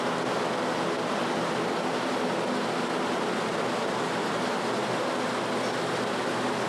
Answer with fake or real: real